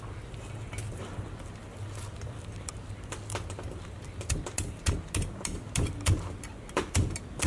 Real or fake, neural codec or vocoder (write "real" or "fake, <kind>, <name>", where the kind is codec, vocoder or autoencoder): real